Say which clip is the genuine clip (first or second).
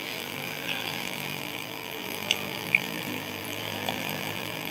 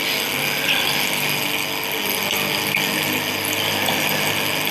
second